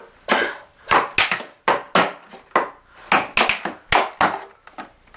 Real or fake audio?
real